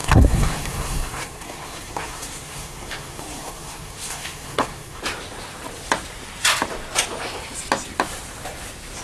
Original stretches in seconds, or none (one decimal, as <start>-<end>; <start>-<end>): 5.0-9.0